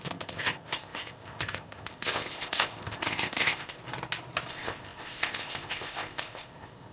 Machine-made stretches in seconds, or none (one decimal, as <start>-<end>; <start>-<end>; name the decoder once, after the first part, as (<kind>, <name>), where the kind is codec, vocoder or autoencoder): 0.0-3.8 (codec, ZipCodec); 4.5-6.9